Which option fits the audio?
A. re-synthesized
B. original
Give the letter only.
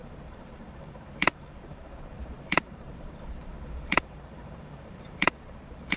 A